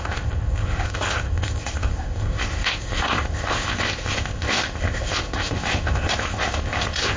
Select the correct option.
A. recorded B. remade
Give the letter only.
B